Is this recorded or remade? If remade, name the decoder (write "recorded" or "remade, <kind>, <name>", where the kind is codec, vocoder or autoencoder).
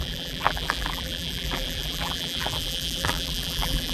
remade, vocoder, BigVGAN v2